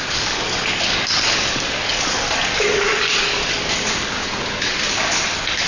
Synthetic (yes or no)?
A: yes